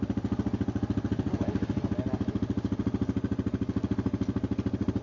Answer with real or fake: real